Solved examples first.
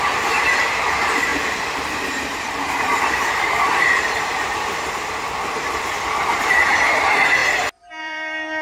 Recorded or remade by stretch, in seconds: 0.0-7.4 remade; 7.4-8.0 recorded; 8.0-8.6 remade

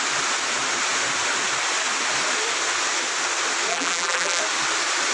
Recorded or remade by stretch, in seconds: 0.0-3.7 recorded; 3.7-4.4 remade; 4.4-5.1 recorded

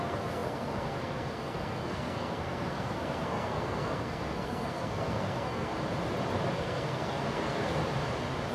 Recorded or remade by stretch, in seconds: 0.0-5.7 remade; 5.7-6.5 recorded; 6.5-7.8 remade; 7.8-8.5 recorded

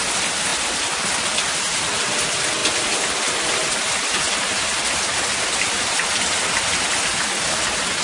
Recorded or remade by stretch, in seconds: 0.0-8.0 recorded

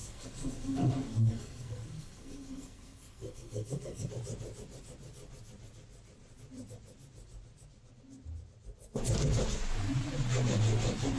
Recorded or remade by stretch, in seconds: 0.0-4.1 remade; 4.1-11.2 recorded

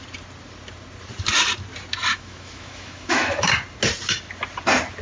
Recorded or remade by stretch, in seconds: 0.0-2.1 recorded; 2.1-3.5 remade; 3.5-5.0 recorded

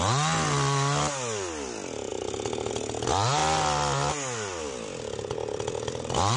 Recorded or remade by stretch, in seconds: 0.0-6.4 recorded

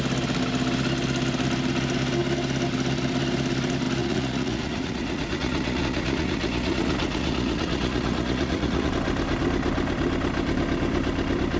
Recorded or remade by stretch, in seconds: 0.0-4.0 recorded; 4.0-8.9 remade; 8.9-11.6 recorded